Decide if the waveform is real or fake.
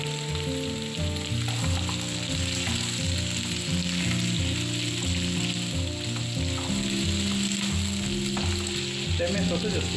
real